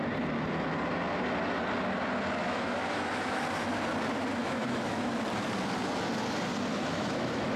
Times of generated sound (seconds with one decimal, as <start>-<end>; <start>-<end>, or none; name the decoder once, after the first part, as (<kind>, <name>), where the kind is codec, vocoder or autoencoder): 2.4-3.4 (autoencoder, DAC-VAE); 4.4-5.0; 6.7-7.6